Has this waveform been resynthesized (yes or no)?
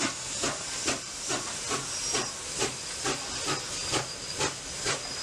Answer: no